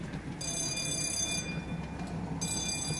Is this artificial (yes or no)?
no